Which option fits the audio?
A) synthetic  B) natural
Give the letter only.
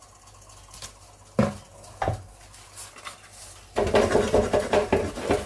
B